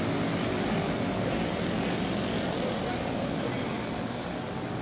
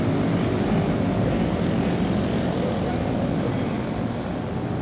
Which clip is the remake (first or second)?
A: second